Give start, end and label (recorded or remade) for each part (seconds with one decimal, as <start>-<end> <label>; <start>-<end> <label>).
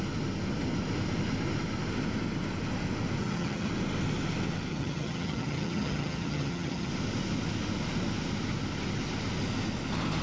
0.0-3.2 recorded; 3.2-3.7 remade; 3.7-4.7 recorded; 4.7-6.9 remade; 6.9-10.2 recorded